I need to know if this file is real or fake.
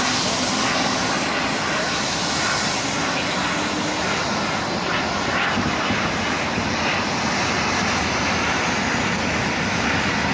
real